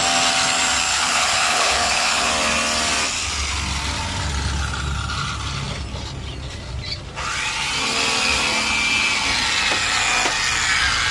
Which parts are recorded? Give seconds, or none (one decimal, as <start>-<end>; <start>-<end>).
0.0-0.9; 2.3-11.1